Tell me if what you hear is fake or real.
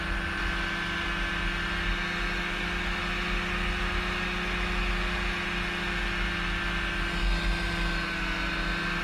real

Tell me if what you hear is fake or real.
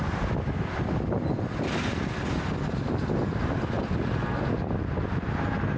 real